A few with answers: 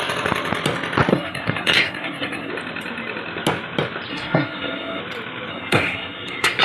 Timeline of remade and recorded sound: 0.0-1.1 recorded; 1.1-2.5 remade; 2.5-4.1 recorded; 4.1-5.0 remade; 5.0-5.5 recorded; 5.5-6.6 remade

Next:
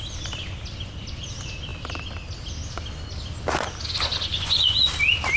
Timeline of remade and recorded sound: 0.0-4.3 recorded; 4.3-4.9 remade; 4.9-5.4 recorded

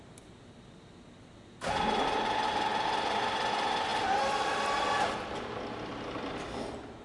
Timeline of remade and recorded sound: 0.0-7.0 recorded